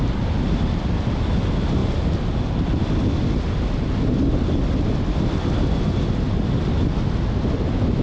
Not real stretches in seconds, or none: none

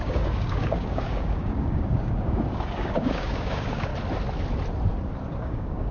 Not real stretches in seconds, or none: 0.0-3.9; 5.4-5.9

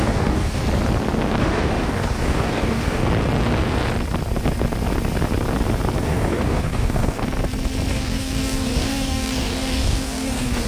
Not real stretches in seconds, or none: 0.0-0.6; 1.4-3.0; 6.0-7.2; 7.9-10.7